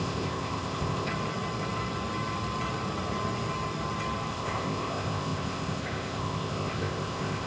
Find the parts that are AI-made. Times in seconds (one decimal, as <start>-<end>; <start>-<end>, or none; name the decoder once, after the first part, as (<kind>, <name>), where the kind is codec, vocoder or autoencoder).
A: 0.0-1.1 (codec, ZipCodec); 4.3-7.5